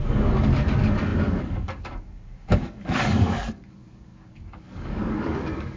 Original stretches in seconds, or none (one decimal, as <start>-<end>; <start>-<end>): none